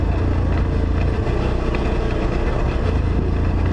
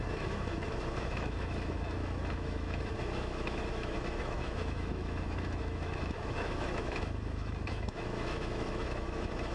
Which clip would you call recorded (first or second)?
first